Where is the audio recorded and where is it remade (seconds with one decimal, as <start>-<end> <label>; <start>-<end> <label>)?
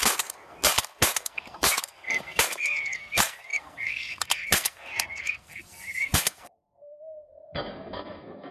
0.0-8.5 remade